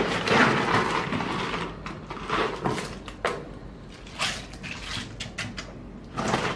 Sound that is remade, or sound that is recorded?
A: recorded